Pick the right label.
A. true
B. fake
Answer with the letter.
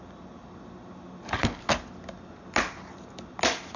A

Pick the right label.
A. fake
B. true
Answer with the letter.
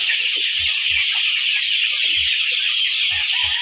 A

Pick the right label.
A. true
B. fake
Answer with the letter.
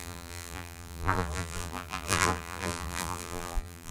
B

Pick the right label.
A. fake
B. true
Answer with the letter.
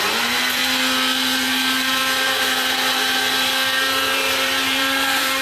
A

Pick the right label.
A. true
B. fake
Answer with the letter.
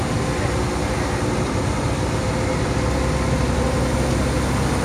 A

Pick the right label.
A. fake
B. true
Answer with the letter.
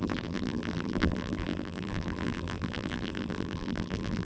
A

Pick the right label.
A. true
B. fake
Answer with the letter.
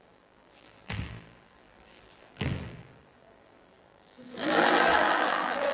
B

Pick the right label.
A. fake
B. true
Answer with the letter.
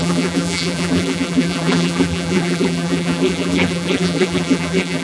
A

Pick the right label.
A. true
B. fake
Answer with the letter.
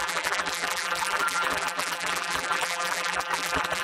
B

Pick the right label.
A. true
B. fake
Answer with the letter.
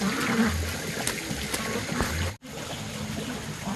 A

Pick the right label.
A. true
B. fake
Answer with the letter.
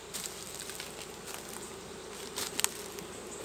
A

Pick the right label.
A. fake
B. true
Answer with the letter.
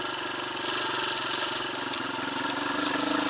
B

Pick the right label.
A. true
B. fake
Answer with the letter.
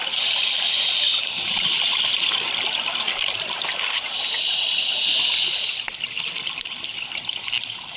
A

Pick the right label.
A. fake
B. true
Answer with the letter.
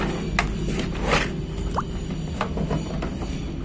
B